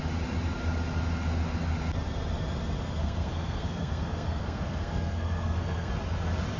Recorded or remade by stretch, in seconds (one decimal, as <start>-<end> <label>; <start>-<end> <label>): 0.0-3.0 recorded; 3.0-5.9 remade; 5.9-6.6 recorded